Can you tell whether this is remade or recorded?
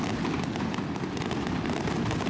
recorded